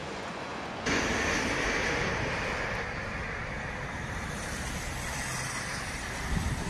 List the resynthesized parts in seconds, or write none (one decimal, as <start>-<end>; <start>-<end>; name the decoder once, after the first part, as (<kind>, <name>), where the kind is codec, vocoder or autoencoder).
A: 0.0-1.0 (vocoder, Vocos)